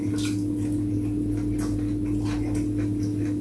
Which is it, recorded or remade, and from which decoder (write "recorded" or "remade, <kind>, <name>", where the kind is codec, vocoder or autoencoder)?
recorded